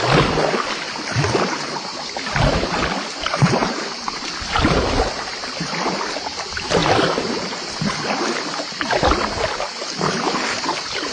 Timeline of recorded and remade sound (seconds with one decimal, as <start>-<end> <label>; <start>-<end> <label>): 0.0-3.6 recorded; 3.6-4.4 remade; 4.4-11.1 recorded